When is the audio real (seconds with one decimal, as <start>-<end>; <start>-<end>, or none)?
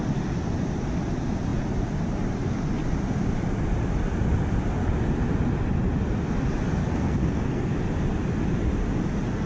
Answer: 0.0-6.8; 7.7-9.5